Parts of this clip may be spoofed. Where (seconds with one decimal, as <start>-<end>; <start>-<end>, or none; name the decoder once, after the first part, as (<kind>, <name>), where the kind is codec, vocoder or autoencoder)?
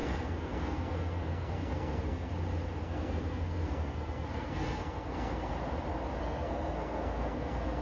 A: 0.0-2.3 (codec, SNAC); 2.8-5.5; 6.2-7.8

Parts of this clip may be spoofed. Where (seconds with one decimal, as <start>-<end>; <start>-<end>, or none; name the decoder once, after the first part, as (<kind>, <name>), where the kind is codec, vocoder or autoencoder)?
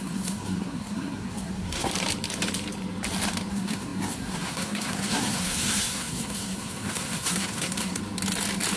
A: 0.0-1.9 (codec, SNAC); 3.5-8.0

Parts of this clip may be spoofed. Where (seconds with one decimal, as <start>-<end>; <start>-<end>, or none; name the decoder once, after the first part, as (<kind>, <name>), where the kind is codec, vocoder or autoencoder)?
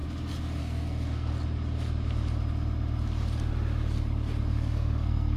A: 0.6-1.3 (codec, SNAC); 4.5-5.4